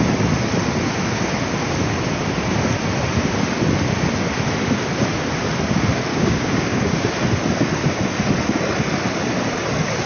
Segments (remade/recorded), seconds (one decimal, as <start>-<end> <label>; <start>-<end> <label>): 0.0-6.1 recorded; 6.1-7.1 remade; 7.1-10.1 recorded